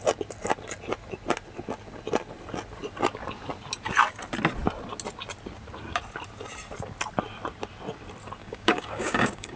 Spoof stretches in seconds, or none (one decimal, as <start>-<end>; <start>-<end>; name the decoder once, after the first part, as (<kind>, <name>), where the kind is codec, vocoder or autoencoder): 8.4-9.6 (codec, DAC)